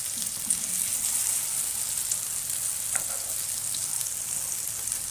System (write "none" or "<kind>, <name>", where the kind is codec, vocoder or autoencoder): none